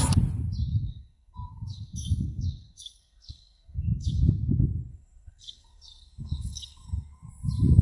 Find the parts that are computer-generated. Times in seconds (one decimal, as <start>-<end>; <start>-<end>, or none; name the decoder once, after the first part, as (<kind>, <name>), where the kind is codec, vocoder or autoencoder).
0.7-4.2 (codec, SNAC); 4.9-7.3